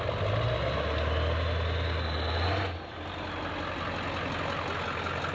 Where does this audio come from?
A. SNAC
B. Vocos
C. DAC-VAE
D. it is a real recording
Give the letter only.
D